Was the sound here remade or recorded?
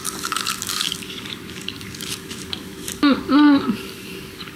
remade